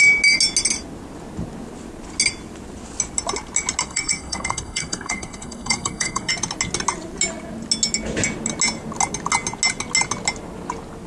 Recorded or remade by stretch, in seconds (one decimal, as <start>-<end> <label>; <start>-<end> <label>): 0.0-3.8 recorded; 3.8-6.3 remade; 6.3-11.1 recorded